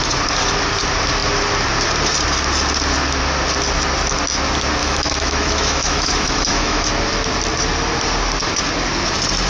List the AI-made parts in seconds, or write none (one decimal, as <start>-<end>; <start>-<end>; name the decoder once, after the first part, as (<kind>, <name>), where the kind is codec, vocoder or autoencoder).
4.8-6.9 (autoencoder, DAC-VAE)

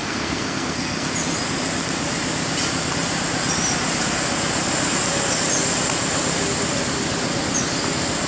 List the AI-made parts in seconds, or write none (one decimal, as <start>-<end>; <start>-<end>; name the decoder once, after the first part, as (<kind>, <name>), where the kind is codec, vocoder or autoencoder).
0.0-1.1 (codec, SNAC)

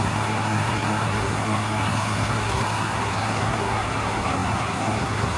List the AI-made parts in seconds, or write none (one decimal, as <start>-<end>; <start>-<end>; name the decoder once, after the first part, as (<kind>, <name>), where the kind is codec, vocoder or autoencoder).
0.0-5.4 (codec, SNAC)

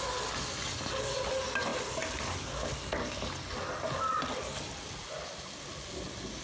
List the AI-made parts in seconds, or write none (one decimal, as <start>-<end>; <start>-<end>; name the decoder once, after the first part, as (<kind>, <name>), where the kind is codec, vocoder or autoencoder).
none

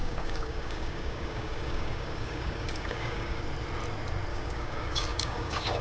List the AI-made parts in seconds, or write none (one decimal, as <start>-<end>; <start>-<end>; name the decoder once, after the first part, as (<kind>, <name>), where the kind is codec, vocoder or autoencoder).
0.0-3.4 (codec, DAC); 4.3-5.8

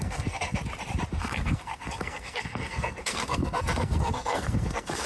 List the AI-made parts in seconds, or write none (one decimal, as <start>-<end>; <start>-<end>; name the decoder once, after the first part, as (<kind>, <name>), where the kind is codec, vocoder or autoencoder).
0.0-0.6 (codec, SNAC); 1.1-5.1

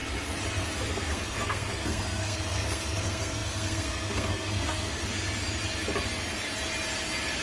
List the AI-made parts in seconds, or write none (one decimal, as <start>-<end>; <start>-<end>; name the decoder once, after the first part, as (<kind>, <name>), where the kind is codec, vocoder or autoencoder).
0.9-5.0 (codec, SNAC)

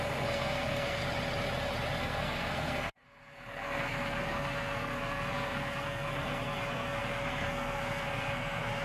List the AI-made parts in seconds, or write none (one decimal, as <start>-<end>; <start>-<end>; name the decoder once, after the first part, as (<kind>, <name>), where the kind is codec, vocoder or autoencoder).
0.0-1.0 (codec, SNAC); 2.0-8.8